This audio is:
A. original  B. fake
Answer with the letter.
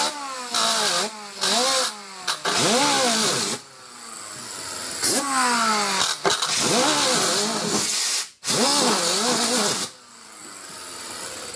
A